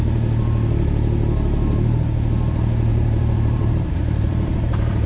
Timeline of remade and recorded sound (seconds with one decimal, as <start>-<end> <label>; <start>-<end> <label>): 0.0-2.9 recorded; 2.9-5.1 remade